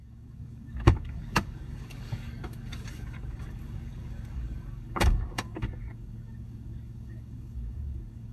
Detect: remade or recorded remade